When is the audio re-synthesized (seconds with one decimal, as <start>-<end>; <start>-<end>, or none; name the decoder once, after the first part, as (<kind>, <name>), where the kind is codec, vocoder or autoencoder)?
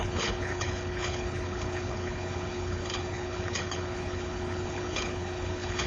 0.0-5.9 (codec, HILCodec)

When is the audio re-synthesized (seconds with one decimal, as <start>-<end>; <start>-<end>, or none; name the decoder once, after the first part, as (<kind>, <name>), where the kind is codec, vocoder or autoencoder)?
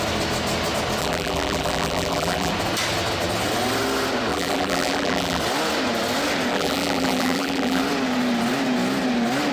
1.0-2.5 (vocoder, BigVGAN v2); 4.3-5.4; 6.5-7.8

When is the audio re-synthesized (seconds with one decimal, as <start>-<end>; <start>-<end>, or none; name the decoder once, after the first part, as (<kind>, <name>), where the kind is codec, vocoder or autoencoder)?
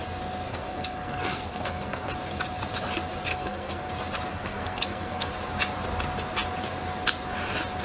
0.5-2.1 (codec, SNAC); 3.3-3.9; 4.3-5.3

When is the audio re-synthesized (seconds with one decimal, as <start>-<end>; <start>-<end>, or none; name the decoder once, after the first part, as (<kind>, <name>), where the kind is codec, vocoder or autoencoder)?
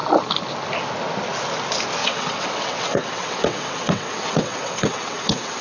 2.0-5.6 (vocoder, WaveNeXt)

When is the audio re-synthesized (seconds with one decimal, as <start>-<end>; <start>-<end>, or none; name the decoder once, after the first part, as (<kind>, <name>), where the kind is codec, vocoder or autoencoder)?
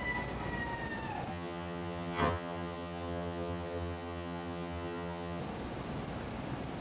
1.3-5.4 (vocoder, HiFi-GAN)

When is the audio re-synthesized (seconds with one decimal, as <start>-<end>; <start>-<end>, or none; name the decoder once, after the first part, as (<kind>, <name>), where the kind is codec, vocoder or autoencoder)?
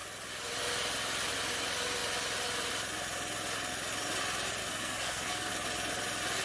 4.6-5.5 (codec, SNAC)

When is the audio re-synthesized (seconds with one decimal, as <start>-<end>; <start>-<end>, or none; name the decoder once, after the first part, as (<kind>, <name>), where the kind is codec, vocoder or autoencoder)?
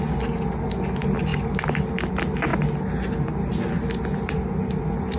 none